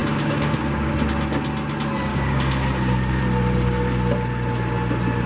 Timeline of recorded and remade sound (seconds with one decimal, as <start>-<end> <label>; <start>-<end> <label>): 0.0-0.9 remade; 0.9-2.1 recorded; 2.1-3.2 remade; 3.2-5.3 recorded